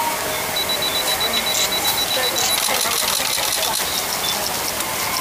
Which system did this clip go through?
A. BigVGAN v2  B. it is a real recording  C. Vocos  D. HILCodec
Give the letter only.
B